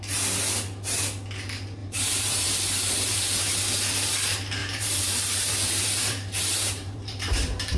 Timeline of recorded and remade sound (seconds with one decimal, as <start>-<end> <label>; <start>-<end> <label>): 0.0-1.8 recorded; 1.8-3.4 remade; 3.4-4.6 recorded; 4.6-7.8 remade